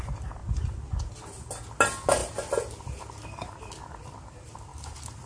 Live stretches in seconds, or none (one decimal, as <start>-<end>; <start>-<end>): 0.0-5.3